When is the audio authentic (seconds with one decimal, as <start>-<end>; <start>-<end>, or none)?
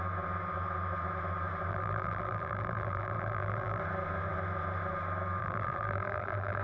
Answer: 0.0-1.7; 3.8-5.4